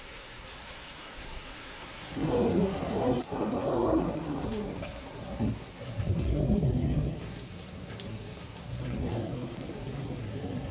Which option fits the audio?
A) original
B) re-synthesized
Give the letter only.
B